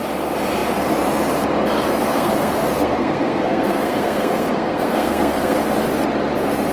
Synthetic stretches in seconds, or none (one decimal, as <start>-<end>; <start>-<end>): 2.0-5.6